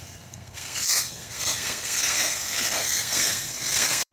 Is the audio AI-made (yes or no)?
yes